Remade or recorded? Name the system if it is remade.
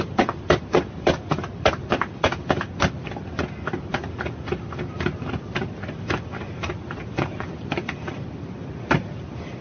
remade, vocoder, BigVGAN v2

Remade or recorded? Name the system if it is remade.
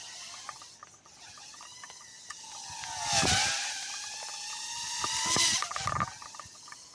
recorded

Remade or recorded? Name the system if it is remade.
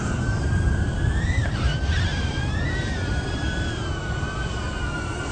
remade, vocoder, BigVGAN v2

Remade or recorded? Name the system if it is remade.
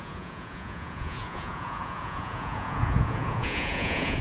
remade, vocoder, Vocos